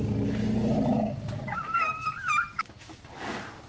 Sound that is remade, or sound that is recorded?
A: recorded